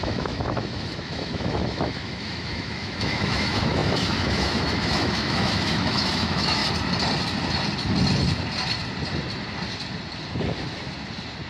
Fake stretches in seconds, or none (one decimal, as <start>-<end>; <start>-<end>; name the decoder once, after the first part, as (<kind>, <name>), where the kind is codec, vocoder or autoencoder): 0.0-6.6 (autoencoder, DAC-VAE)